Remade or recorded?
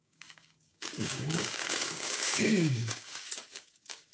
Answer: remade